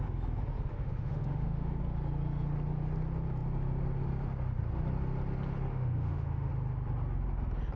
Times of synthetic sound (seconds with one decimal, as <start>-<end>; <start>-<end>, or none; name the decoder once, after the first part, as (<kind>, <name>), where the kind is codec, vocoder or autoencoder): 0.7-1.8 (autoencoder, DAC-VAE); 5.7-6.5